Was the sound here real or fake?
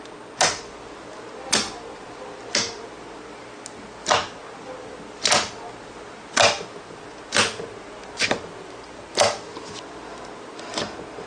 real